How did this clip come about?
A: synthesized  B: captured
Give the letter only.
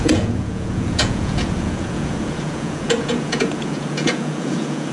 A